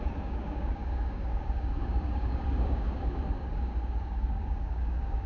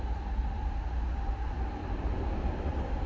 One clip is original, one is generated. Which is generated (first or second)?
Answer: first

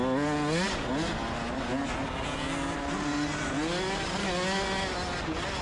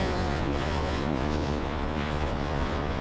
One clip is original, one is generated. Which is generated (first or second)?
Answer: second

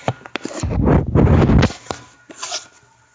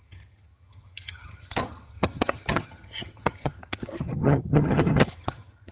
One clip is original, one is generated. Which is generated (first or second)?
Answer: second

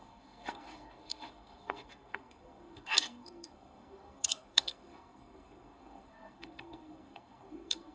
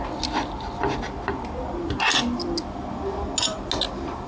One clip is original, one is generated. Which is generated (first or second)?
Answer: first